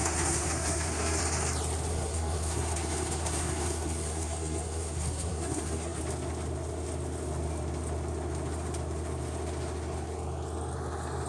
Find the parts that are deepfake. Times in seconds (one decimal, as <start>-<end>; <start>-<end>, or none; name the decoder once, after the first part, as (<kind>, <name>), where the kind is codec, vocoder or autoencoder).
0.0-1.2 (codec, SNAC); 1.9-6.0